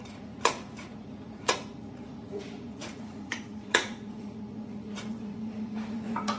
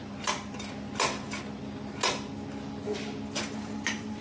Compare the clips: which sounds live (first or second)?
second